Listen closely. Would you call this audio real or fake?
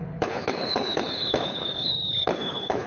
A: fake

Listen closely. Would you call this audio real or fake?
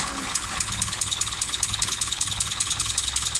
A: fake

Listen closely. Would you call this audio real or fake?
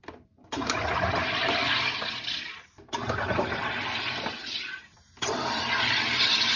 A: real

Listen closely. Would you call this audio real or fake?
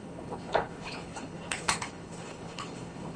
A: fake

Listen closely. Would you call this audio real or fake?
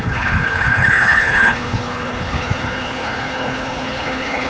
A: fake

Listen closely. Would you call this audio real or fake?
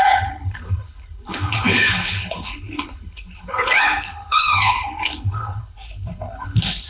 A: fake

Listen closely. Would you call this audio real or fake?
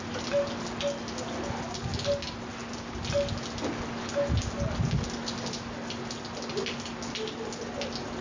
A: real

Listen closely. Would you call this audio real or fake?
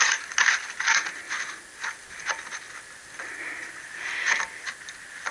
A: real